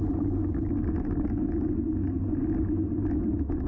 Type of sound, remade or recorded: recorded